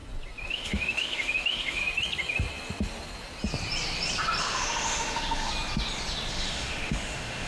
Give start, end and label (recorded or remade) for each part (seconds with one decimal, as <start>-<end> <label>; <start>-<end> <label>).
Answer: 0.0-0.5 recorded; 0.5-1.8 remade; 1.8-4.4 recorded; 4.4-5.5 remade; 5.5-6.3 recorded; 6.3-7.5 remade